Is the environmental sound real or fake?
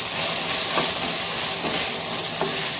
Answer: real